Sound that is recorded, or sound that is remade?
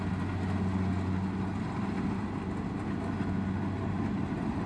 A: recorded